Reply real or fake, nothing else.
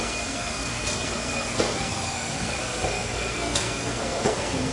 fake